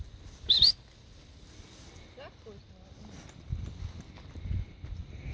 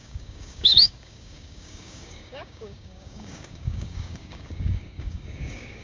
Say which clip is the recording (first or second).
first